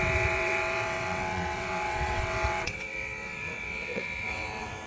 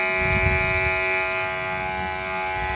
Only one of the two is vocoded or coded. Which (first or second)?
first